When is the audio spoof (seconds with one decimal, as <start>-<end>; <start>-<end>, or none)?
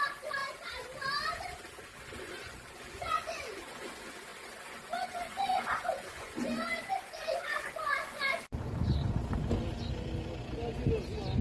0.0-0.4; 2.0-9.0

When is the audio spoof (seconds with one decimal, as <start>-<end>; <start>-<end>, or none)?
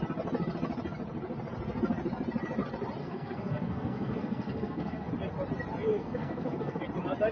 3.0-5.1; 5.9-6.8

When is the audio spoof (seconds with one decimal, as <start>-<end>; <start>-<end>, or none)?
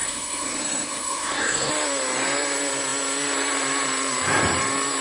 0.0-1.7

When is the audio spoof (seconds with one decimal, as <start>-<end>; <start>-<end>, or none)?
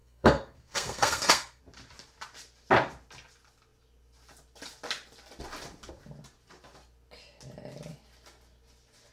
0.0-1.6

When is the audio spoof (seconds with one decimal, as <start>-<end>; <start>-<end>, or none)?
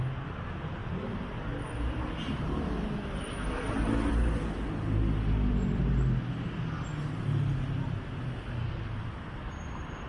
none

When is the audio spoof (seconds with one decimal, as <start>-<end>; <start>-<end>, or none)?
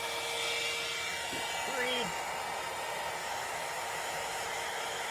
3.2-5.1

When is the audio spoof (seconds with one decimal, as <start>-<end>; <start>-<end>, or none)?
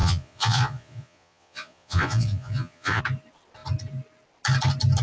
0.0-3.0